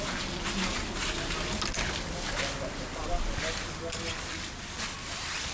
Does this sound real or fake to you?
real